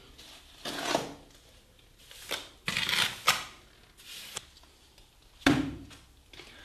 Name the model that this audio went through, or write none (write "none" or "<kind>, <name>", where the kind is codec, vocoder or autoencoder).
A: none